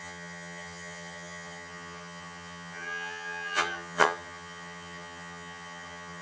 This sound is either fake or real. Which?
fake